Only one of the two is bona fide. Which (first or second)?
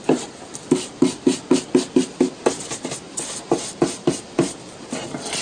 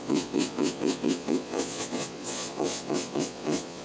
first